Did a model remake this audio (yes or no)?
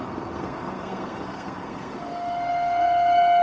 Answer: yes